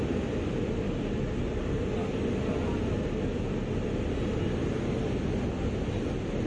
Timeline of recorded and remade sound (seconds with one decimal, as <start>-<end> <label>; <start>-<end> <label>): 0.0-6.5 recorded